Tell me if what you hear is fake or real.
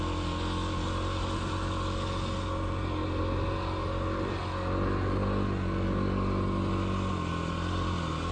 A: real